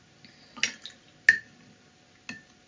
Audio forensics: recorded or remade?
recorded